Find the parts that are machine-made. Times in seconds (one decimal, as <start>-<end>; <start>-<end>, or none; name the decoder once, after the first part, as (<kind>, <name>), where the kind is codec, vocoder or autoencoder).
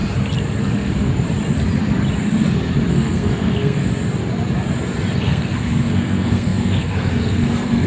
0.6-1.1 (codec, SNAC); 2.9-3.8; 5.2-7.9